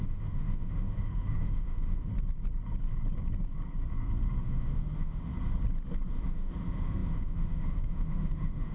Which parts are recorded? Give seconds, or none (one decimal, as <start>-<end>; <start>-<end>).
2.1-4.4; 5.3-6.1